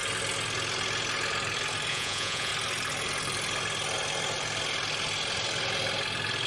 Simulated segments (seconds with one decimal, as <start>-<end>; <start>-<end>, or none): 1.9-2.5